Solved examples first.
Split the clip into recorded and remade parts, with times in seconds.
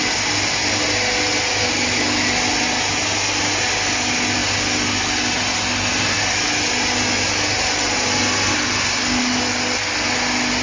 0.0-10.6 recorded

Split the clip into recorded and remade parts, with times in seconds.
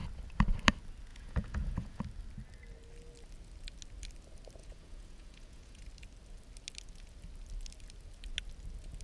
0.0-1.1 recorded; 1.1-2.0 remade; 2.0-4.6 recorded; 4.6-5.8 remade; 5.8-9.0 recorded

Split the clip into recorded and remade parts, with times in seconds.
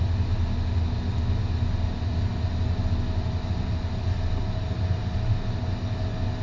0.0-6.4 recorded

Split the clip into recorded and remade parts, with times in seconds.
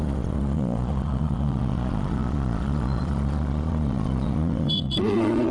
0.0-5.5 remade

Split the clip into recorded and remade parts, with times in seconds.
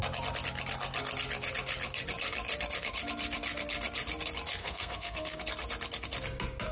0.0-4.6 recorded; 4.6-5.4 remade; 5.4-6.7 recorded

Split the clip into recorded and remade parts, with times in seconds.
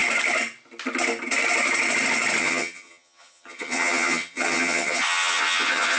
0.0-2.4 recorded; 2.4-6.0 remade